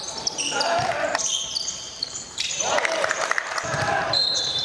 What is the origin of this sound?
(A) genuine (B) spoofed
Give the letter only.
B